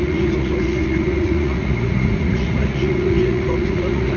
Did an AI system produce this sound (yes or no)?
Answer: yes